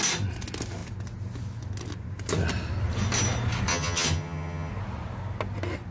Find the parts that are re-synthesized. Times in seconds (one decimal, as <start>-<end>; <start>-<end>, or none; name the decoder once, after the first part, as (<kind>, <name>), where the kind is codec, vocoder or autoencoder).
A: 3.7-4.7 (vocoder, HiFi-GAN)